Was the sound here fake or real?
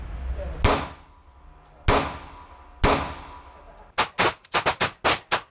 real